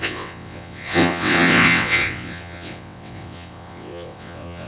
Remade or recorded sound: remade